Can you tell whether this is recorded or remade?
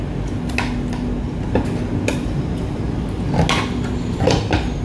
recorded